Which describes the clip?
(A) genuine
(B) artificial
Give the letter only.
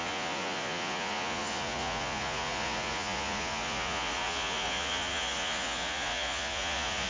B